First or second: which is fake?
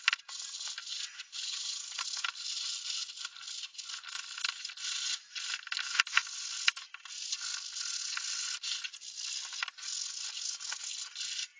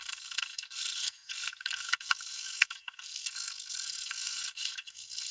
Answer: second